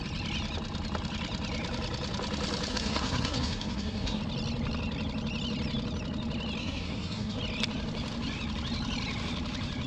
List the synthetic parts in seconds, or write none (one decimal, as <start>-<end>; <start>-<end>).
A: 2.7-4.2; 6.6-7.4